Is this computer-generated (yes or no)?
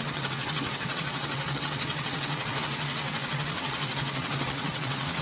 yes